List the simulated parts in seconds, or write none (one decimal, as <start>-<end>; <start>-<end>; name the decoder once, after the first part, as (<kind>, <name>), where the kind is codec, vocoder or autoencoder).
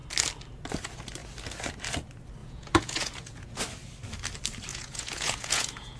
2.4-3.6 (vocoder, Vocos); 4.7-6.0